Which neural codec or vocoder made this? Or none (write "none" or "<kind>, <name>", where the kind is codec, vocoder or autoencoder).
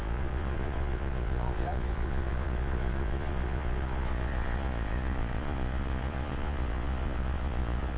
vocoder, Vocos